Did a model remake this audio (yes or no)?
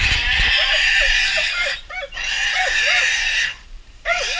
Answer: yes